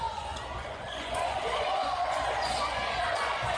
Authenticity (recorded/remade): remade